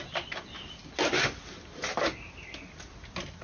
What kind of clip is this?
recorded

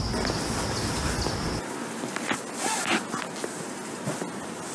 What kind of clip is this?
recorded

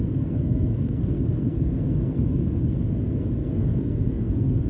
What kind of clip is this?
remade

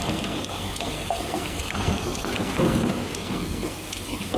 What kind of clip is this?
remade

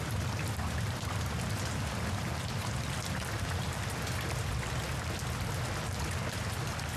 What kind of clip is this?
recorded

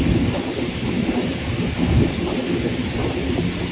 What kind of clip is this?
recorded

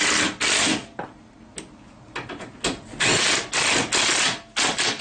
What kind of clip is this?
recorded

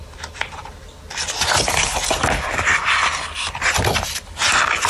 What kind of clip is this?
recorded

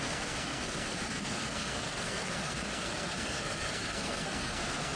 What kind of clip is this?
remade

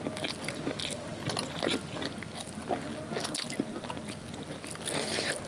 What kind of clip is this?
recorded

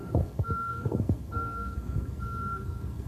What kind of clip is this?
remade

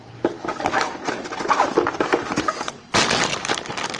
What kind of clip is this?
recorded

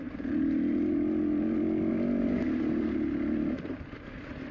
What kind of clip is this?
recorded